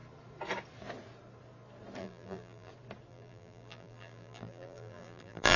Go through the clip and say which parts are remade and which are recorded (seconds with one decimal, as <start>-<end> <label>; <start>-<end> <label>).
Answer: 0.0-2.0 recorded; 2.0-2.7 remade; 2.7-3.1 recorded; 3.1-5.6 remade